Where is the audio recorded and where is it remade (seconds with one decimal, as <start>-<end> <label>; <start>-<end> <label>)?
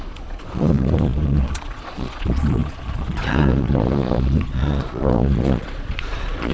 0.0-6.5 remade